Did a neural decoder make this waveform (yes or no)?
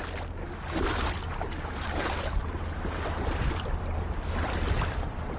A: no